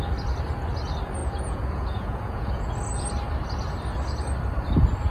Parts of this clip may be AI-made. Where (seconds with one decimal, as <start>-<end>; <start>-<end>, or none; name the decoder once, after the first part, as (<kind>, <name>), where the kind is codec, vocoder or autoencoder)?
1.2-2.7 (vocoder, Vocos)